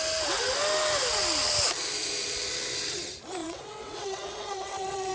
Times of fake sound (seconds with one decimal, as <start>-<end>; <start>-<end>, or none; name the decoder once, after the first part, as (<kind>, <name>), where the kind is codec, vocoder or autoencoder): 3.4-5.1 (vocoder, WaveNeXt)

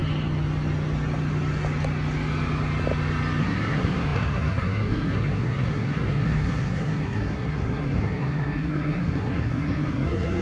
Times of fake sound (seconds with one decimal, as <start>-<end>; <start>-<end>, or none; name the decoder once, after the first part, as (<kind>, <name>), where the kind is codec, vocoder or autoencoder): 3.4-10.4 (codec, SNAC)

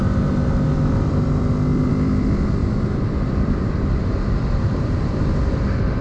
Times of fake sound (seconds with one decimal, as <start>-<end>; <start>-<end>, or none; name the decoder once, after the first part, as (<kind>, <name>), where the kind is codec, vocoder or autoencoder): 0.8-6.0 (vocoder, BigVGAN v2)

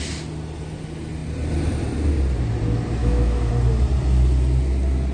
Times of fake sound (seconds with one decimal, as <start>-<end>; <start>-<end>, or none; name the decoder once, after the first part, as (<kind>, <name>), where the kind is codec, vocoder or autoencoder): 3.0-3.5 (autoencoder, DAC-VAE)

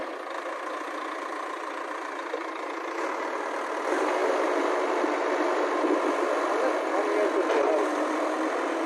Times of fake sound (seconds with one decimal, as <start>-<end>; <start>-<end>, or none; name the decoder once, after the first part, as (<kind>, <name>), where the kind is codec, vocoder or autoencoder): none